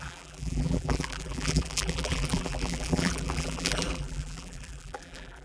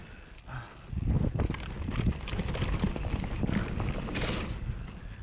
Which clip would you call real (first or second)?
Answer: second